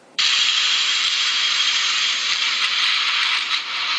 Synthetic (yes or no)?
yes